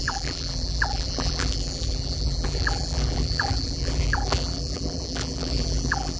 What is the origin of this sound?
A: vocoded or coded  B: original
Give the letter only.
A